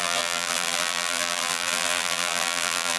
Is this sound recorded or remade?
remade